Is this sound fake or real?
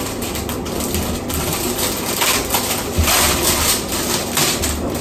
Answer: real